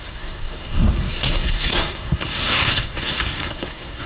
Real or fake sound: fake